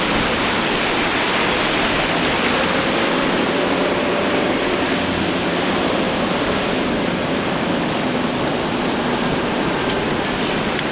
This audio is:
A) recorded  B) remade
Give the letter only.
A